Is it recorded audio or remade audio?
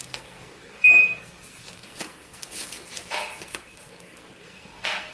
remade